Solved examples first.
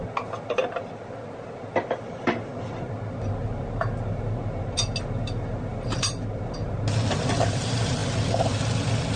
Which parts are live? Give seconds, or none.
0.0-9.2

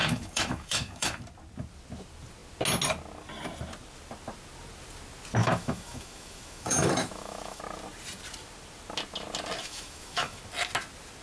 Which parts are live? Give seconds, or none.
1.2-5.4; 7.6-9.6; 10.4-11.2

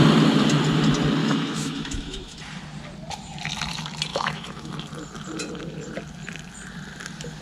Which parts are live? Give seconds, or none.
0.0-1.2; 2.4-4.1; 4.7-7.4

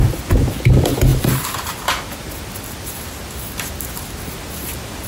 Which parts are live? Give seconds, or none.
0.0-5.1

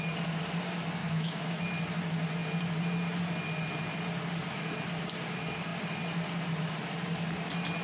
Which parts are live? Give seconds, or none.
0.0-1.0; 1.6-7.8